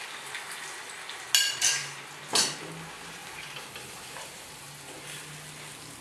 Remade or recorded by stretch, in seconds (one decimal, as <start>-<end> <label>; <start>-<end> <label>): 0.0-3.2 recorded; 3.2-4.8 remade; 4.8-6.0 recorded